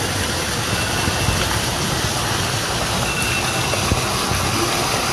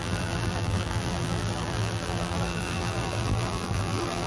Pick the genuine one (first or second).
first